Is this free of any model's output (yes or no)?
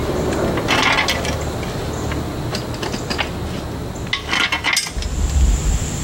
yes